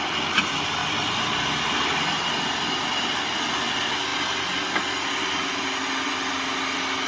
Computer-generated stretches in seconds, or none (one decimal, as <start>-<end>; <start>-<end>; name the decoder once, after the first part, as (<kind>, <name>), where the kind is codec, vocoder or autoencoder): none